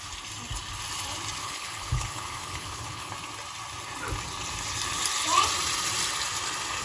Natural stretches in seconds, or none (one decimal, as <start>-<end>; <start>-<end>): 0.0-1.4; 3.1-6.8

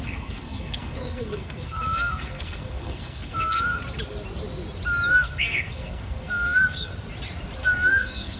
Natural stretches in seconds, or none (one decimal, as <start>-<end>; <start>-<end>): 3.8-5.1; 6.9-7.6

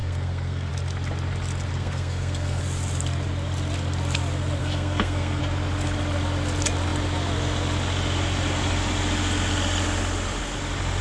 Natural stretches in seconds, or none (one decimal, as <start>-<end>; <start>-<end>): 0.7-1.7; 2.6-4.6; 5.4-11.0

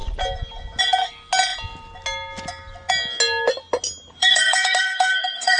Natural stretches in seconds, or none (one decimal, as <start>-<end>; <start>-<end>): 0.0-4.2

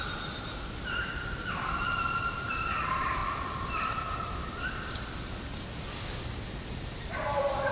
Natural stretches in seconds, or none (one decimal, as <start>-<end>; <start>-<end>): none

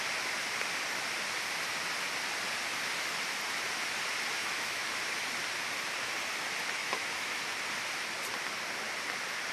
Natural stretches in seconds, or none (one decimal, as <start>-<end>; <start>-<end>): 0.0-4.4; 4.9-6.8; 7.4-9.5

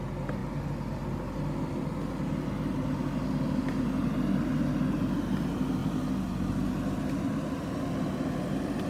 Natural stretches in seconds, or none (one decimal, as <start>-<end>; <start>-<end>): 0.0-8.9